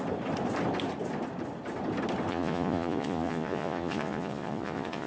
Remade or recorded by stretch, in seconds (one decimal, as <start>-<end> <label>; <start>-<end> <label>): 0.0-2.3 recorded; 2.3-5.1 remade